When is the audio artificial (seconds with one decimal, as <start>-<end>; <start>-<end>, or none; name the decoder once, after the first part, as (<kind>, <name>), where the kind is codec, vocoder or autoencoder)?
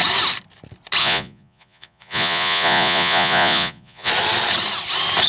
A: 1.0-4.1 (vocoder, Vocos)